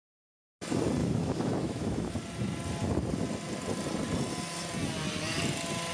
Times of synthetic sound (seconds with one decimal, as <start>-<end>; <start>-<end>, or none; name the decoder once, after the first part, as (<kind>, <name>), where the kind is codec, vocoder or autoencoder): 1.0-2.1 (autoencoder, DAC-VAE)